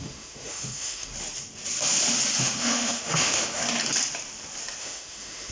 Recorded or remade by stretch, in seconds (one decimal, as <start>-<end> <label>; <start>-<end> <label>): 0.0-1.1 remade; 1.1-2.4 recorded; 2.4-3.6 remade; 3.6-4.8 recorded; 4.8-5.5 remade